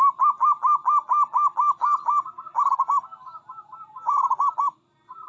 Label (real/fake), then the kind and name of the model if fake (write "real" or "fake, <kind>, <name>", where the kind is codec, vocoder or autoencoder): real